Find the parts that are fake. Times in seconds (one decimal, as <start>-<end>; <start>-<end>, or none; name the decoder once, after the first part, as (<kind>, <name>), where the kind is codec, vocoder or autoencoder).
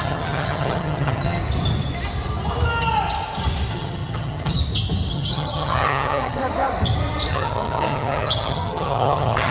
0.0-1.4 (vocoder, HiFi-GAN); 3.7-4.6; 5.1-6.4; 7.3-9.5